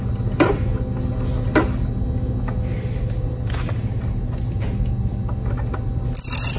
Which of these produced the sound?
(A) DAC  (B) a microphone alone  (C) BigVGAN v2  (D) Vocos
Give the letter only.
B